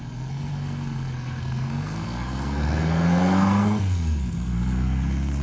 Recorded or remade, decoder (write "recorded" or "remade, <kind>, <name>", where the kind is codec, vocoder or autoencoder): remade, codec, SNAC